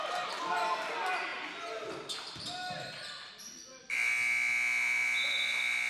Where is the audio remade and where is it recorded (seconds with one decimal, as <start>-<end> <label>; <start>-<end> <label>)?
0.0-5.9 recorded